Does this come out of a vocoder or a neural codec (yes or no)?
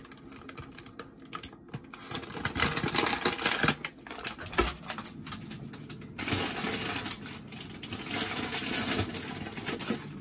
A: no